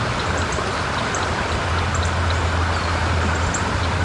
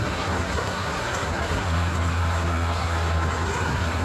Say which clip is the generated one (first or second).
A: second